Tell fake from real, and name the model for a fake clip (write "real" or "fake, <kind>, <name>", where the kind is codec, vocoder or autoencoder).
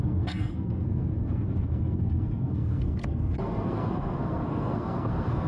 fake, codec, SNAC